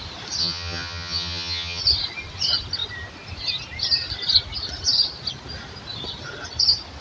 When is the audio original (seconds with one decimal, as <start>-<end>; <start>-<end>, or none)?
0.0-0.4; 1.8-7.0